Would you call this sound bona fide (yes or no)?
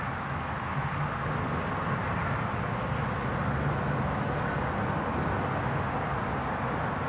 yes